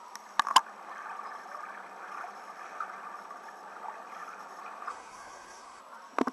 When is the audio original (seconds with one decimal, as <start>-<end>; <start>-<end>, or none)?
0.0-4.9; 5.8-6.3